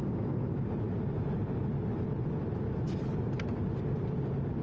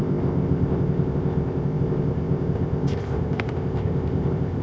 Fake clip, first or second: second